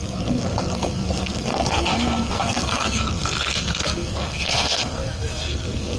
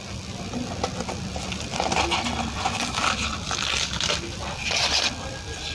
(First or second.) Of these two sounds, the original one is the second